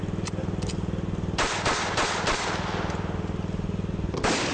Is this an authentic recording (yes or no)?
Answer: yes